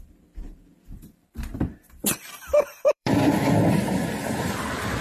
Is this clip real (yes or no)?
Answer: no